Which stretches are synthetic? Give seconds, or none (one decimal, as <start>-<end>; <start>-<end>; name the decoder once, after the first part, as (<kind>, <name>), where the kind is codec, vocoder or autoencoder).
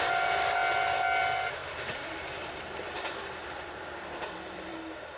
1.6-4.7 (vocoder, BigVGAN v2)